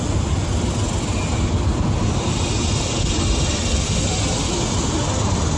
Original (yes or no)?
yes